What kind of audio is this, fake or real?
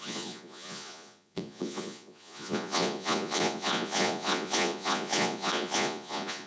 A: fake